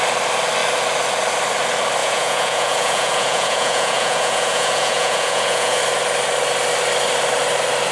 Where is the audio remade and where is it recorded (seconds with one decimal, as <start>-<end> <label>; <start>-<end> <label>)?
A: 0.0-2.0 recorded; 2.0-5.8 remade; 5.8-7.9 recorded